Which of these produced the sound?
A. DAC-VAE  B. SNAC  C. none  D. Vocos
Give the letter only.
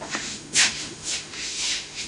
A